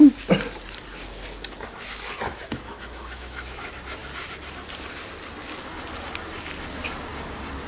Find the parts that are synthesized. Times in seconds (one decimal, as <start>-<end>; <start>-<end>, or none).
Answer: 2.3-3.6